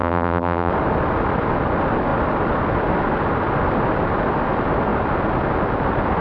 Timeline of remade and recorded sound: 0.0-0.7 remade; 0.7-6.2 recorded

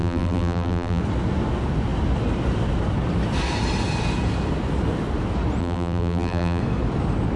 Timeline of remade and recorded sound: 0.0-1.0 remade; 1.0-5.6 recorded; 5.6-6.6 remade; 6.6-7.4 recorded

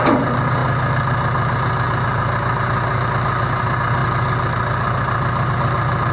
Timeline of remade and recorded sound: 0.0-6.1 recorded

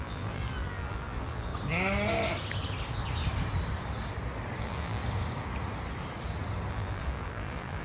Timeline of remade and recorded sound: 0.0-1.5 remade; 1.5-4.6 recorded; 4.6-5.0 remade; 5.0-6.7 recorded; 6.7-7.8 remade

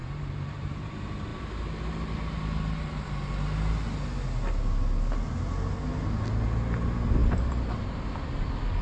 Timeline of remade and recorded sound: 0.0-0.9 remade; 0.9-7.2 recorded; 7.2-7.7 remade; 7.7-8.8 recorded

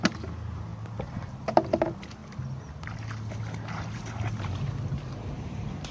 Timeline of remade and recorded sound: 0.0-2.2 recorded; 2.2-5.2 remade; 5.2-5.9 recorded

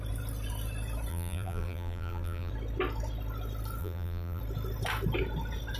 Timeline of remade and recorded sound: 0.0-1.1 recorded; 1.1-2.5 remade; 2.5-3.8 recorded; 3.8-4.4 remade; 4.4-5.8 recorded